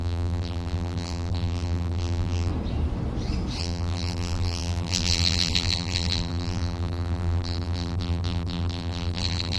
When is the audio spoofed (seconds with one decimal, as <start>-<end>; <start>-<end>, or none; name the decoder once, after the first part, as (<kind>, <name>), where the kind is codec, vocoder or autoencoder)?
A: 0.0-2.5 (vocoder, BigVGAN v2); 3.6-9.6